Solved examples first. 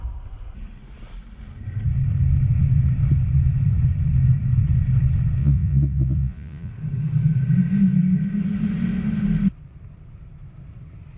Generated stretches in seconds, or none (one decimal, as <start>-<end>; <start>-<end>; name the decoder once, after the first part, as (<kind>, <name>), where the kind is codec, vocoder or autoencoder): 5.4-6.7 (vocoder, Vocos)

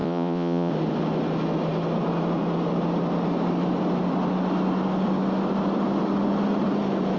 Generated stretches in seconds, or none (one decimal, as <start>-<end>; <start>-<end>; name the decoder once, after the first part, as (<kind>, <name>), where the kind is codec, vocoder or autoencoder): 0.0-0.7 (vocoder, Vocos)

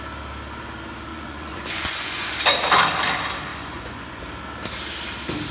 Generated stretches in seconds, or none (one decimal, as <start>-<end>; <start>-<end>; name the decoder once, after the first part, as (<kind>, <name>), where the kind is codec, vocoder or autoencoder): 1.1-2.3 (vocoder, Vocos); 3.5-4.2

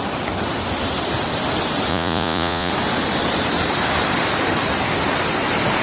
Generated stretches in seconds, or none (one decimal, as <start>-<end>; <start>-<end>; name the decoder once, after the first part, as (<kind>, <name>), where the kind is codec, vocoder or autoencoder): 1.9-2.7 (vocoder, Vocos)

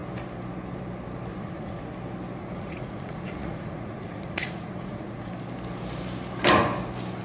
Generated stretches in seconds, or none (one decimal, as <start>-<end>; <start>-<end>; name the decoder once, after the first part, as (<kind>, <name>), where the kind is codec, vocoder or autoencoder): 1.3-1.8 (vocoder, Vocos); 2.4-5.3